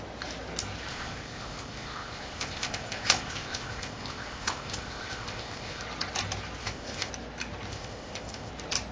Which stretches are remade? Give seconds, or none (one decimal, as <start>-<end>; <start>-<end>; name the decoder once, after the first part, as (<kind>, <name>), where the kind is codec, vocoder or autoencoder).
0.9-5.8 (codec, ZipCodec); 6.6-7.1; 7.7-8.5